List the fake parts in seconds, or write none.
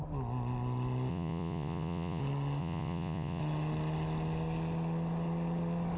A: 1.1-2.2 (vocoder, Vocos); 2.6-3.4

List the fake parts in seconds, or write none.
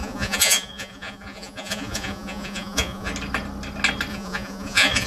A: 0.0-3.1 (vocoder, Vocos); 4.1-5.1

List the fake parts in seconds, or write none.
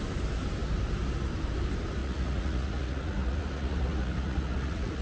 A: 2.0-5.0 (vocoder, Vocos)